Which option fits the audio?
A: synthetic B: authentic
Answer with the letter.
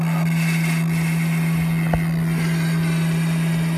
B